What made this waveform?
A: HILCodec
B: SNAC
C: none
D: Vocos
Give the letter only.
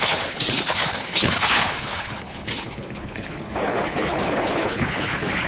A